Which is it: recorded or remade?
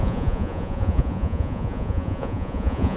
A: remade